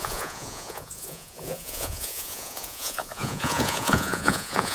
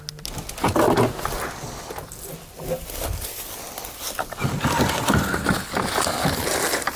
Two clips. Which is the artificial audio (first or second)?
first